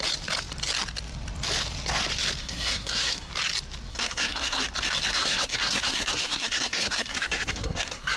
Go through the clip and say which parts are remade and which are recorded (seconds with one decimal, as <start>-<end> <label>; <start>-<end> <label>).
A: 0.0-2.4 recorded; 2.4-3.3 remade; 3.3-3.9 recorded; 3.9-4.6 remade; 4.6-5.1 recorded; 5.1-8.2 remade